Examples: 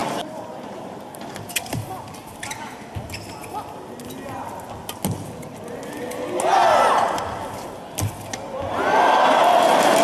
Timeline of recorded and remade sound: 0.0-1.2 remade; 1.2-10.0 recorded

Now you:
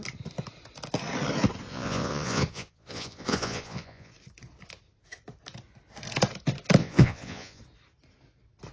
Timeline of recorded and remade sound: 0.0-1.7 recorded; 1.7-4.1 remade; 4.1-6.8 recorded; 6.8-7.6 remade; 7.6-8.7 recorded

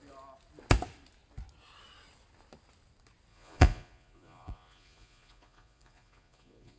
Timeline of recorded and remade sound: 0.0-3.3 recorded; 3.3-6.8 remade

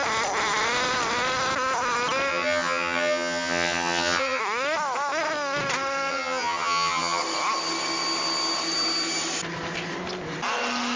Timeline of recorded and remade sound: 0.0-2.3 recorded; 2.3-4.4 remade; 4.4-6.1 recorded; 6.1-7.2 remade; 7.2-11.0 recorded

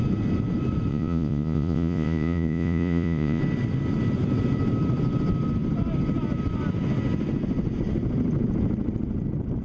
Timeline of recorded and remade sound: 0.0-0.9 recorded; 0.9-3.4 remade; 3.4-9.6 recorded

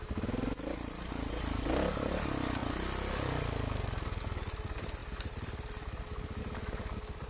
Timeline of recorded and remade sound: 0.0-5.0 recorded; 5.0-6.4 remade; 6.4-7.3 recorded

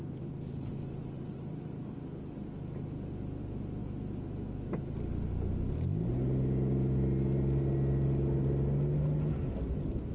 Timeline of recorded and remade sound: 0.0-10.1 recorded

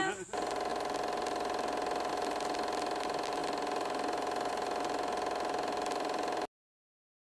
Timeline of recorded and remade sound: 0.0-7.2 recorded